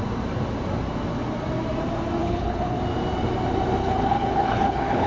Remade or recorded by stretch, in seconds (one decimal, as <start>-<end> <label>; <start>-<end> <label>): 0.0-2.2 recorded; 2.2-2.8 remade; 2.8-3.8 recorded; 3.8-5.1 remade